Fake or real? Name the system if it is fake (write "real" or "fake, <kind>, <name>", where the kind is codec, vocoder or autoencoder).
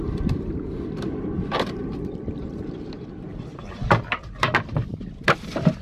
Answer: fake, vocoder, BigVGAN v2